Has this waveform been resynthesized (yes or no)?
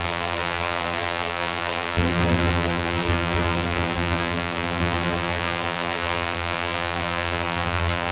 yes